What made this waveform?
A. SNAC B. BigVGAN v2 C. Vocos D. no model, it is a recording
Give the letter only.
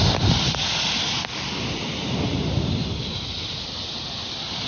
D